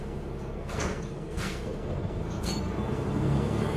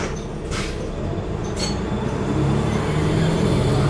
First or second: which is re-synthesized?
first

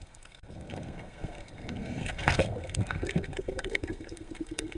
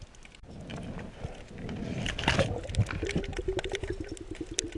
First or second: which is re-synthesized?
first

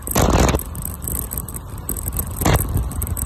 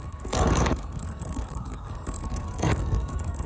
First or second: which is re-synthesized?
second